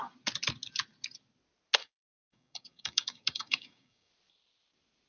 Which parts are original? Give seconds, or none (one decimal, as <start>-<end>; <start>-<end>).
0.0-1.8; 4.1-5.1